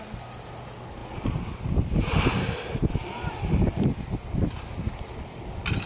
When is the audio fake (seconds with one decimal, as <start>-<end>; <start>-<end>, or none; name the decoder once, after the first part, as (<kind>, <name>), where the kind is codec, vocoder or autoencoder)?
none